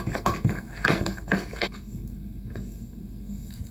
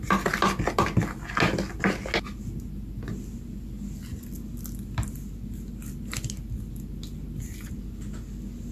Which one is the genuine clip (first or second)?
second